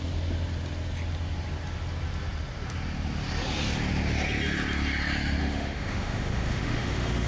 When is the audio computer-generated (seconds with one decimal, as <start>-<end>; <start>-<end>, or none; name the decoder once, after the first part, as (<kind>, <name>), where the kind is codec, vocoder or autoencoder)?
5.4-7.3 (autoencoder, DAC-VAE)